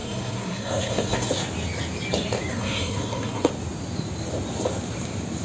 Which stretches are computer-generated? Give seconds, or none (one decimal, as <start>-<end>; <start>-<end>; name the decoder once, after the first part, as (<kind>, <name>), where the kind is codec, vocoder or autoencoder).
0.0-1.3 (codec, SNAC); 2.5-3.5